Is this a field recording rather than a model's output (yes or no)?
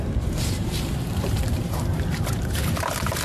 no